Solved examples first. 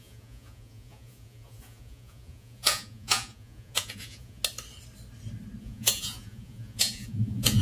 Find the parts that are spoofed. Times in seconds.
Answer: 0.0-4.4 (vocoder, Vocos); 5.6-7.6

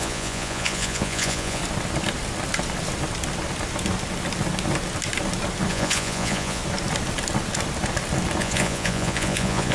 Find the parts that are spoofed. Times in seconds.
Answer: 0.0-1.6 (vocoder, Vocos); 5.7-6.6; 8.4-9.7